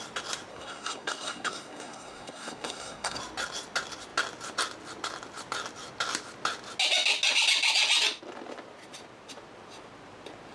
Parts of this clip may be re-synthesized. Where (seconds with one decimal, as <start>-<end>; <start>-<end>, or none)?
0.5-3.2